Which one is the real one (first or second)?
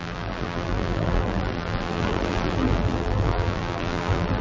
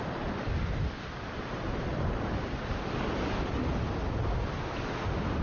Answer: second